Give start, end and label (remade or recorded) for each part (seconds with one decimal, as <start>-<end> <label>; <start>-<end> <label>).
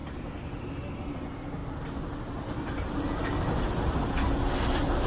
0.0-5.1 recorded